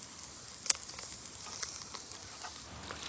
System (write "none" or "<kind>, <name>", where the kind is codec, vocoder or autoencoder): none